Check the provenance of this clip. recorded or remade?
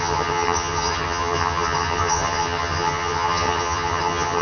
remade